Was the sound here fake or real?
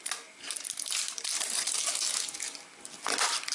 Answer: real